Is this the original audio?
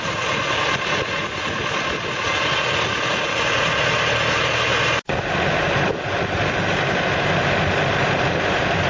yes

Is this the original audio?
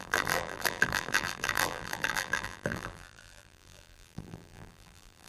no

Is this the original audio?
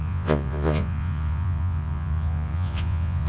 no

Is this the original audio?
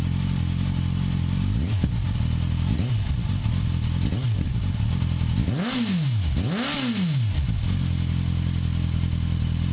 yes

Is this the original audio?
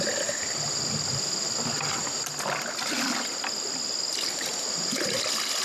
yes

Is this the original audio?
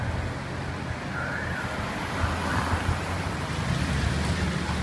yes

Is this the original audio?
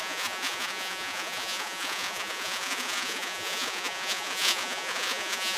no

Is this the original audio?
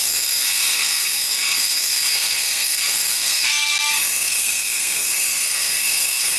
no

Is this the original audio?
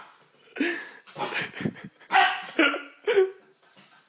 yes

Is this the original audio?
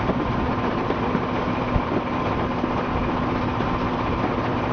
yes